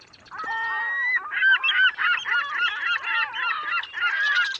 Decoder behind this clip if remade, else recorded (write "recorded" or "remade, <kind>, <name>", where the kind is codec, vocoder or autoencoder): recorded